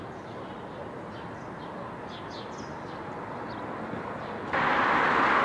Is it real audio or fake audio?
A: real